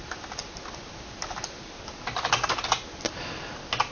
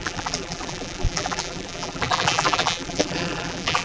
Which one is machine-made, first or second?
second